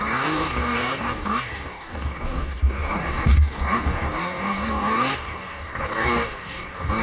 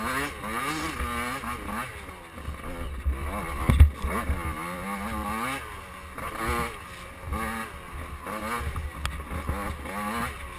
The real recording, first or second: second